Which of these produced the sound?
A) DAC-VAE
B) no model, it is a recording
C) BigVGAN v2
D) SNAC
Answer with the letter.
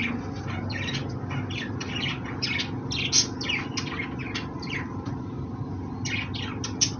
B